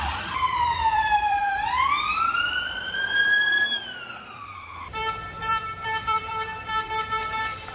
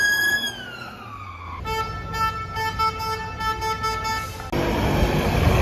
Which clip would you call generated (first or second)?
first